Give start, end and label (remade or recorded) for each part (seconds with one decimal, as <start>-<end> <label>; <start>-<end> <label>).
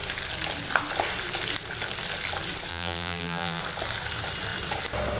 0.0-2.7 recorded; 2.7-3.6 remade; 3.6-5.2 recorded